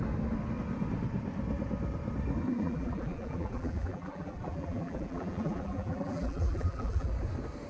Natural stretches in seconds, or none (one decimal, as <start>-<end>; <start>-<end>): 0.0-2.5; 7.1-7.7

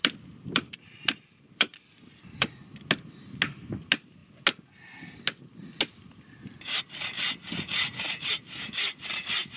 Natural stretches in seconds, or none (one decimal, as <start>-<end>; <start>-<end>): 2.5-9.6

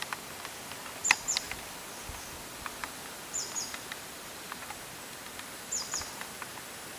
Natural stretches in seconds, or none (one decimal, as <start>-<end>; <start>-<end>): 0.0-7.0

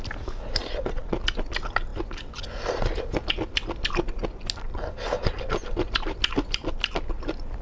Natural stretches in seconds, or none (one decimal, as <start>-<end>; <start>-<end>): 0.0-0.6; 1.4-5.6; 6.2-7.6